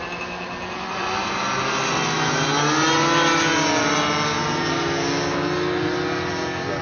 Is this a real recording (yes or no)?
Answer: yes